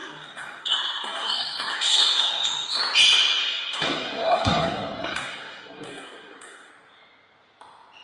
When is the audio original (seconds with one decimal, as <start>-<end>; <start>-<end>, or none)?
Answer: 2.8-3.4; 6.7-8.0